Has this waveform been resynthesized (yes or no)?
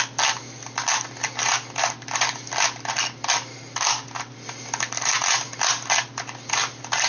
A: no